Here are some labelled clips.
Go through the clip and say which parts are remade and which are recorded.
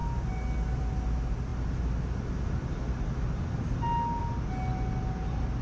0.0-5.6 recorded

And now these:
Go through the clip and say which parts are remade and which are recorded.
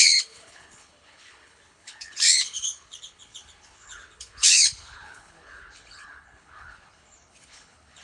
0.0-8.0 remade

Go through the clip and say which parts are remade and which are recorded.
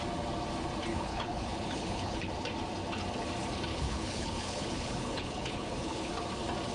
0.0-0.9 recorded; 0.9-2.3 remade; 2.3-3.7 recorded; 3.7-6.1 remade; 6.1-6.7 recorded